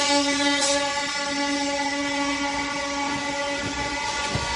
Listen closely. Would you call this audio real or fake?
fake